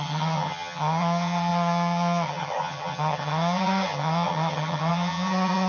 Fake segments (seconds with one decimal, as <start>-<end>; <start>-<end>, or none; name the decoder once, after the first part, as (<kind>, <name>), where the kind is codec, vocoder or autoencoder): 0.0-5.7 (vocoder, HiFi-GAN)

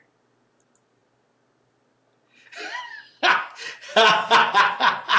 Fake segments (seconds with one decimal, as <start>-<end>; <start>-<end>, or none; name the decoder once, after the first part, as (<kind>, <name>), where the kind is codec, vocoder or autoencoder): none

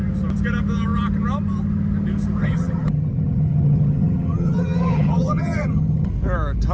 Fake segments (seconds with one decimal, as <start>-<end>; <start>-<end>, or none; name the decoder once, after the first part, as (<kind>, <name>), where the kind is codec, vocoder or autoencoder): 2.4-6.1 (vocoder, HiFi-GAN)

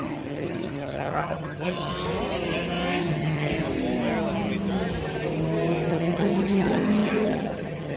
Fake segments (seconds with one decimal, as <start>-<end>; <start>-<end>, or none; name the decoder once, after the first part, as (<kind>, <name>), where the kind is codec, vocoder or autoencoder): 0.0-1.9 (vocoder, HiFi-GAN); 3.0-3.5; 5.9-8.0

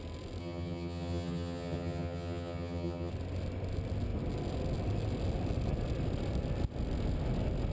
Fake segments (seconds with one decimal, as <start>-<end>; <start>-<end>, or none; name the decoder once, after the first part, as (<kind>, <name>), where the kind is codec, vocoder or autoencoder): 0.4-3.1 (vocoder, HiFi-GAN)

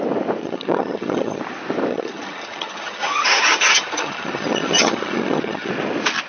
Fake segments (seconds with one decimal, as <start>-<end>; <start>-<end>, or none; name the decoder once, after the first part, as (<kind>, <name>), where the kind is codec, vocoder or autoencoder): 0.4-1.4 (vocoder, HiFi-GAN); 1.9-5.7

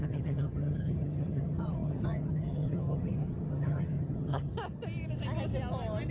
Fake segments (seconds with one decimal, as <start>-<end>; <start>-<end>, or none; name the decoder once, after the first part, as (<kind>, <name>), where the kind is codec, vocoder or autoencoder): 0.0-4.5 (vocoder, HiFi-GAN)